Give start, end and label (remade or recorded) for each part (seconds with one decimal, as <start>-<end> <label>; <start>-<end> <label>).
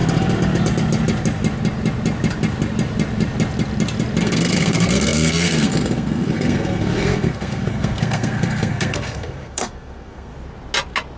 0.0-4.2 recorded; 4.2-10.3 remade; 10.3-11.2 recorded